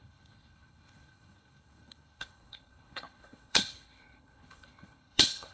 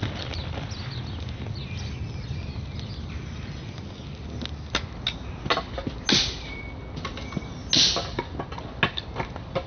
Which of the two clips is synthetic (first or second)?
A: first